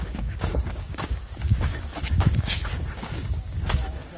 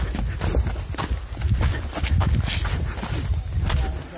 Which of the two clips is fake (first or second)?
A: first